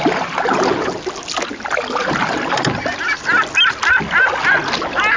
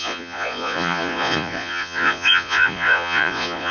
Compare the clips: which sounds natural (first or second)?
first